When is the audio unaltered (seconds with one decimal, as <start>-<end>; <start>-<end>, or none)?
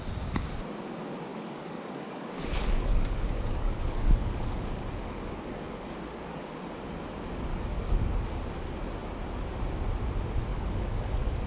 0.0-1.3; 6.4-7.5; 8.4-10.5